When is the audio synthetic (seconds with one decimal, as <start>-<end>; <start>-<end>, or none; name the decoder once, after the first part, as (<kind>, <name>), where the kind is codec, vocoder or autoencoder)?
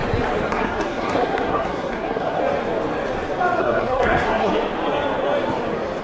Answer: 0.5-2.4 (codec, SNAC); 3.6-4.5